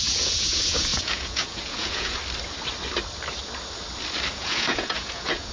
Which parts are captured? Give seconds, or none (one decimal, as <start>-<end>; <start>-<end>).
2.2-4.3